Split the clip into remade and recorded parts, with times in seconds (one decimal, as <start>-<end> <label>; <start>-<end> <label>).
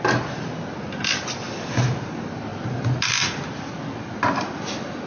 0.0-5.1 recorded